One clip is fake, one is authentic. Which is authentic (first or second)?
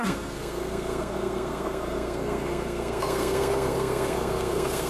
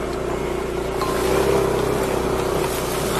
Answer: second